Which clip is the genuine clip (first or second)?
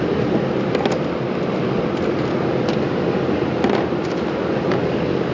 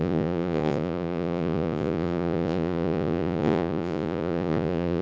first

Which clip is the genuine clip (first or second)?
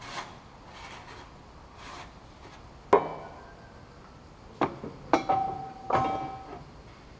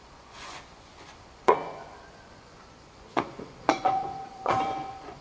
first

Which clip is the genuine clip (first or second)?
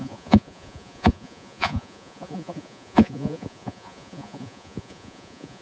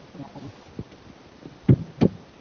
second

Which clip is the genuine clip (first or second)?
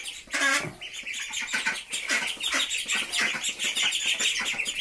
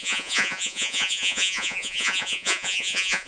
first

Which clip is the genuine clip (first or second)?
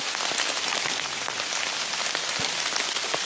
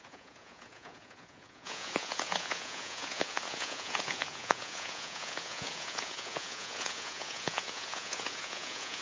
first